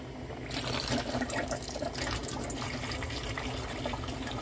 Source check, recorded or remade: recorded